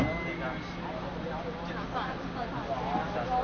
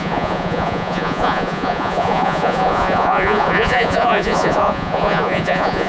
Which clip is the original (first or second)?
first